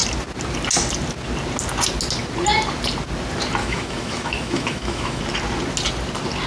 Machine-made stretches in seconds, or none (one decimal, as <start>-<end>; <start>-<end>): 3.6-5.2